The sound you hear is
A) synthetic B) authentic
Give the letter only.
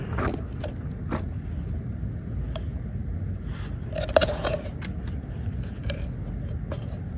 B